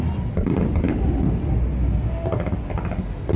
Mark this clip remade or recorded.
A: recorded